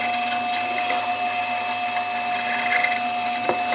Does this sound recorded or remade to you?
recorded